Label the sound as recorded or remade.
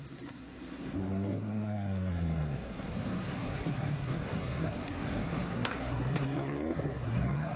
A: remade